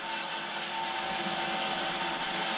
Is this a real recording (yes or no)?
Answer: yes